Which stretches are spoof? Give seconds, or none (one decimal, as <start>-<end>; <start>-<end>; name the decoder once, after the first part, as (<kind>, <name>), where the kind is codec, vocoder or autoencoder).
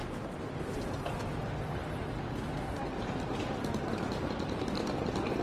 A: none